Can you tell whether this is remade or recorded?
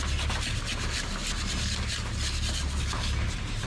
recorded